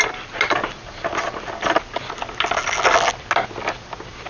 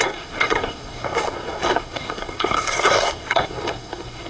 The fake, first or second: second